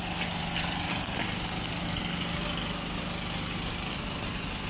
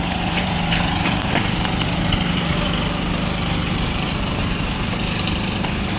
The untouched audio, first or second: first